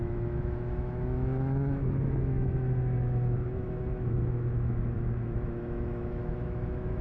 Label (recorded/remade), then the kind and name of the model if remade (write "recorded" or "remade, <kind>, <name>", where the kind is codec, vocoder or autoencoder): remade, autoencoder, DAC-VAE